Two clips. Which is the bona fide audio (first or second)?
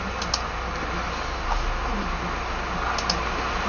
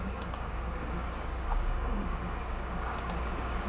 first